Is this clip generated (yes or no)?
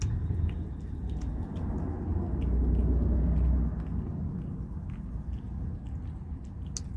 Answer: no